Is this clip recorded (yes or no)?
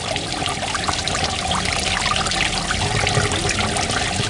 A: yes